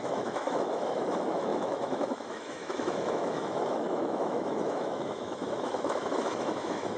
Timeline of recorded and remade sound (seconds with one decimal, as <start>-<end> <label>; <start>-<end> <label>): 0.0-7.0 remade